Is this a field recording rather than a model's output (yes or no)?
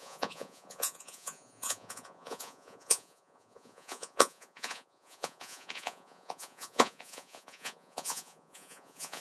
no